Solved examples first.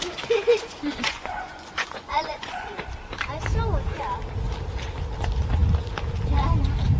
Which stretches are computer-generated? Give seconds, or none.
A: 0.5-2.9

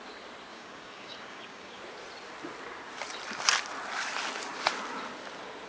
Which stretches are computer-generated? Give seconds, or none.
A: 0.5-1.8

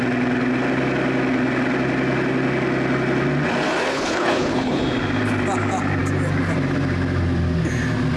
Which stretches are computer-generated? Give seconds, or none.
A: 3.9-4.8

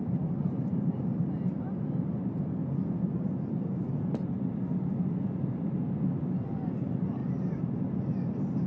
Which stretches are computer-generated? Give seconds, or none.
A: 0.0-1.2; 2.2-2.6; 6.1-7.2; 7.7-8.7

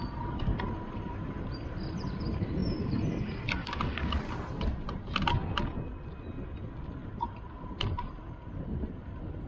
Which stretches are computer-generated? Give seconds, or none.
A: 0.0-2.6; 4.2-5.4; 6.9-9.5

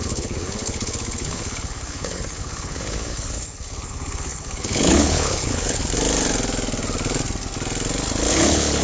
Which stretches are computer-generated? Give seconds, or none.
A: 0.0-5.8; 8.3-8.8

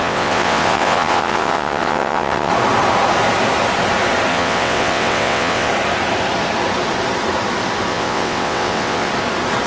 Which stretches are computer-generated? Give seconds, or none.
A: 0.0-2.5; 4.3-5.7; 7.9-9.1